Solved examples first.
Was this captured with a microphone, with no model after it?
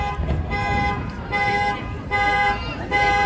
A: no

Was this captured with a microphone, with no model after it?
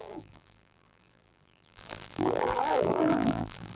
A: no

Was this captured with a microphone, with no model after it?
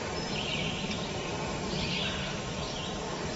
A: yes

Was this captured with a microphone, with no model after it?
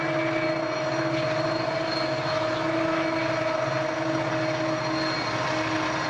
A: yes